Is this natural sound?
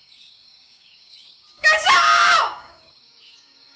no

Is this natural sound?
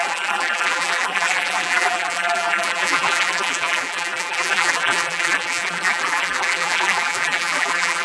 no